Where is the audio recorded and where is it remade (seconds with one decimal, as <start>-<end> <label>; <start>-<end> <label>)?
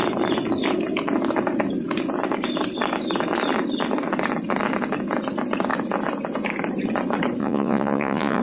0.0-7.4 recorded; 7.4-8.4 remade